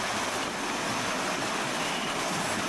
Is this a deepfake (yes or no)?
no